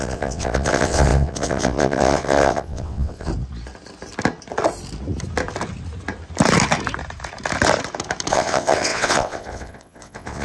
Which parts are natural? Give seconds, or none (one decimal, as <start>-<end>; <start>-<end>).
3.3-8.3

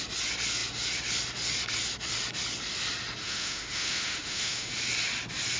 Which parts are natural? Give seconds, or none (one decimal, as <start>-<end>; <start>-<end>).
0.0-3.2; 4.7-5.6